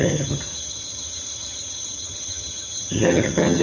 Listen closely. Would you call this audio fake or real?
fake